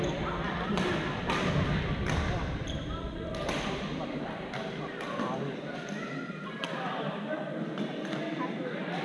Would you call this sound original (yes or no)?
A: no